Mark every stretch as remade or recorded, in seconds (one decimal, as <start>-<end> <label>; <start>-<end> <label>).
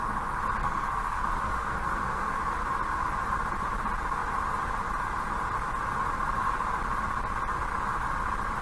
0.0-0.6 recorded; 0.6-2.4 remade; 2.4-8.6 recorded